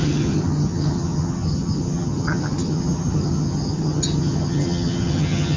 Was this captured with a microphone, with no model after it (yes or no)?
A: no